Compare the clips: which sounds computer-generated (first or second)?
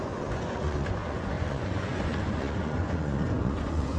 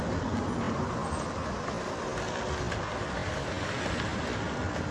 first